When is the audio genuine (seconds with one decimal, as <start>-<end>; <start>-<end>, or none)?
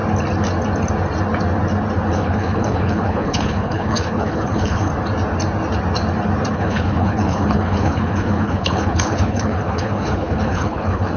0.0-2.1; 4.9-6.5